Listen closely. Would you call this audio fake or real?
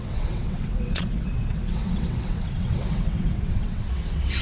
fake